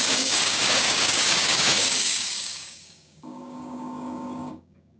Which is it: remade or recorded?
remade